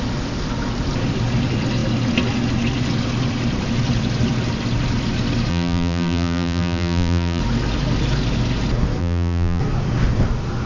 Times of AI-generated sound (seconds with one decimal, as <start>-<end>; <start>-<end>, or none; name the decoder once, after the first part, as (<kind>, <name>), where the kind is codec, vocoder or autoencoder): 5.5-7.4 (vocoder, BigVGAN v2); 9.0-9.6